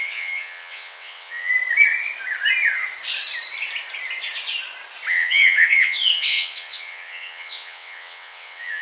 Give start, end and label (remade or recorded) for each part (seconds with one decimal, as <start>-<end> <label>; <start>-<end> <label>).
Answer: 0.0-1.5 remade; 1.5-5.1 recorded; 5.1-8.8 remade